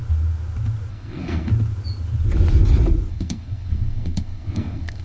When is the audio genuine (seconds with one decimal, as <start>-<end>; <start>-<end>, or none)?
0.0-0.9; 1.5-3.1